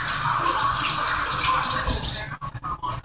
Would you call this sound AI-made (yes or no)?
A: no